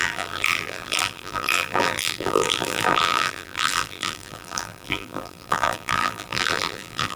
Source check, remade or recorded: remade